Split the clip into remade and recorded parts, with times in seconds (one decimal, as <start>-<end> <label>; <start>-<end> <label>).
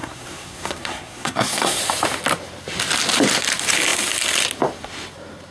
0.0-1.8 remade; 1.8-5.5 recorded